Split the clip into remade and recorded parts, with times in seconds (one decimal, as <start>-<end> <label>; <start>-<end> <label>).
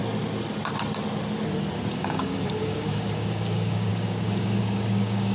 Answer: 0.0-1.9 recorded; 1.9-5.3 remade